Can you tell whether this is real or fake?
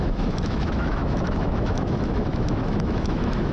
fake